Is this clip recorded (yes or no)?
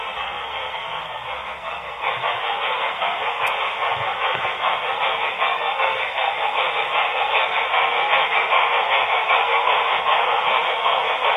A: no